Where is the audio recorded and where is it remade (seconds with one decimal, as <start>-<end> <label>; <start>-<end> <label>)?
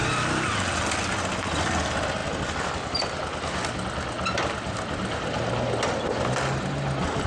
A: 0.0-7.3 recorded